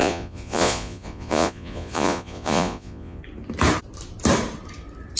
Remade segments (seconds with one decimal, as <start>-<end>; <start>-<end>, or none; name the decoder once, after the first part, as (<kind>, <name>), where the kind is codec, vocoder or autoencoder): 0.0-3.2 (vocoder, Vocos)